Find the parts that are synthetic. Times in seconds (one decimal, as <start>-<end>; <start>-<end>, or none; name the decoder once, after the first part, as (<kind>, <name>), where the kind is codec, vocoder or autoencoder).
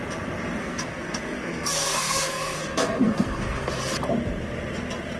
0.6-3.7 (codec, SNAC)